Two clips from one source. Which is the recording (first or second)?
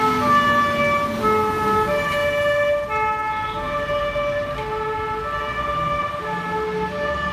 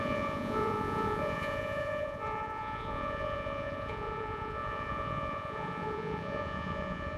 first